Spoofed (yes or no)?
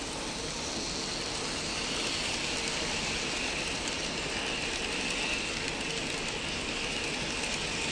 no